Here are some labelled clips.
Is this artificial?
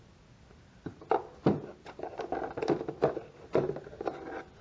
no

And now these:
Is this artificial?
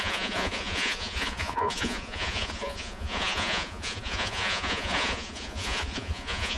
yes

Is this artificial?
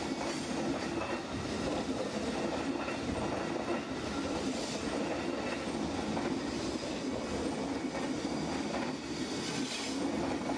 no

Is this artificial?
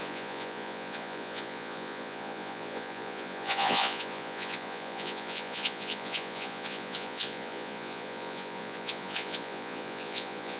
yes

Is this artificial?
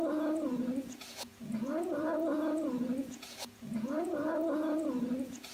yes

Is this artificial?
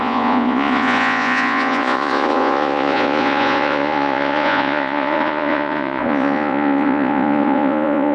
yes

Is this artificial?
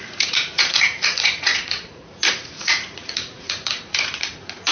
yes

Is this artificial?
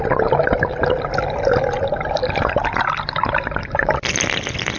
no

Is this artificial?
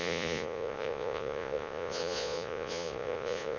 yes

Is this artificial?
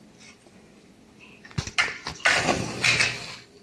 no